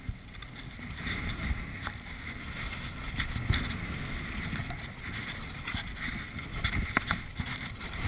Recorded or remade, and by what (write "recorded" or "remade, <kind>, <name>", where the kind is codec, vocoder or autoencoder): recorded